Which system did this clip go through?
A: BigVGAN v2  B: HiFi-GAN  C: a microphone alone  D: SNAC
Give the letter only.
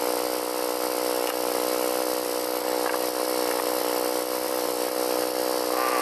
C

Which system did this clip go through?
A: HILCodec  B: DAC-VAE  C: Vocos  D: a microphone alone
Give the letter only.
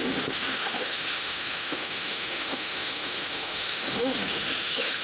B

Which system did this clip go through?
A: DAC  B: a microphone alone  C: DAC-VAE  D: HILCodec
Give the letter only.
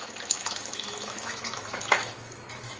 C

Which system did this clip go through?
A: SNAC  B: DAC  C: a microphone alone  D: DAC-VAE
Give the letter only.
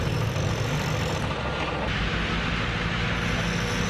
C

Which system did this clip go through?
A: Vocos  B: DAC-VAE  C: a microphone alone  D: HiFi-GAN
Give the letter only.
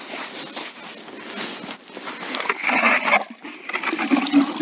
C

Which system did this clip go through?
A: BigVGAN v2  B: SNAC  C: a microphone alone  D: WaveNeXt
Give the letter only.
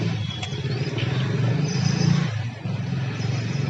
C